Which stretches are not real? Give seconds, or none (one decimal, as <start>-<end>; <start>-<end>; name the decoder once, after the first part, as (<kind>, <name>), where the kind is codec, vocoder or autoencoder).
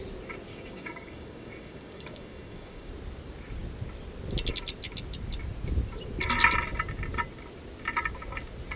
0.5-2.9 (codec, DAC)